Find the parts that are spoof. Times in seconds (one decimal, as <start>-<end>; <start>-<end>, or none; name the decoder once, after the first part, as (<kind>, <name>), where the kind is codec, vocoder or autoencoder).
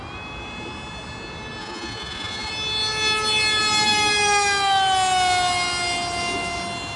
1.6-2.5 (vocoder, Vocos)